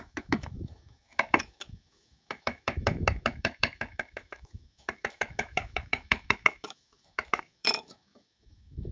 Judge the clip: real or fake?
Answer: fake